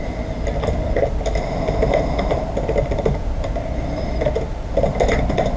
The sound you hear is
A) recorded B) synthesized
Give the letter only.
A